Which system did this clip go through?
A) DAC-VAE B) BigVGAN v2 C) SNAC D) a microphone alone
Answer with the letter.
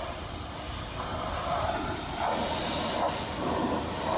D